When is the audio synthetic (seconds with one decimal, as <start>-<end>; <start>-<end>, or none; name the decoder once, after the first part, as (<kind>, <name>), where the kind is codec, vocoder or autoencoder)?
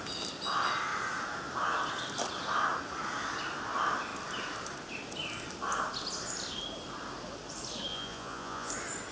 7.9-8.7 (vocoder, Vocos)